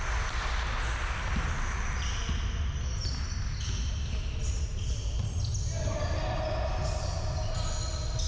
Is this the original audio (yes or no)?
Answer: yes